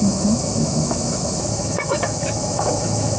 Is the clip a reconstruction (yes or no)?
yes